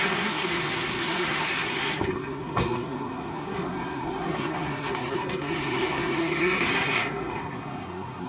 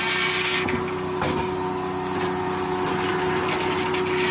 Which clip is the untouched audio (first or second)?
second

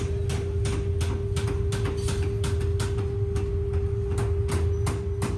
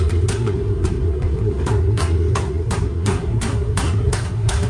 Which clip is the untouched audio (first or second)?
first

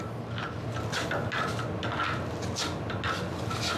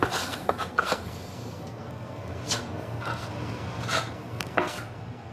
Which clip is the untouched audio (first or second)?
first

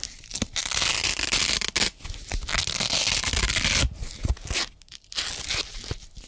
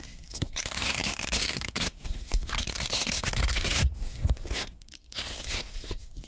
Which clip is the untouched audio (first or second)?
first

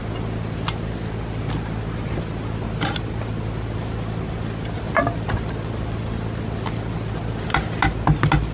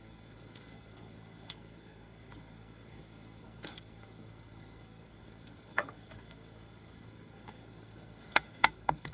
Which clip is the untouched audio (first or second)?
first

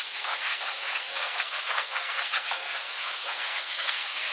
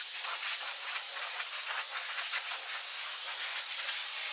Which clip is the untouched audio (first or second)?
second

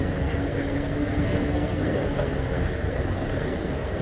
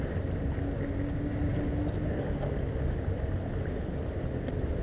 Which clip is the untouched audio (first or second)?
second